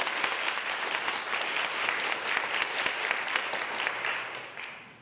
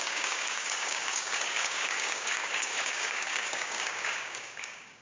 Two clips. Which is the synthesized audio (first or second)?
second